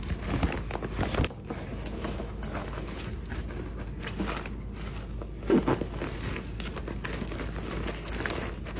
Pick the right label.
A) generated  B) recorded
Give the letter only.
B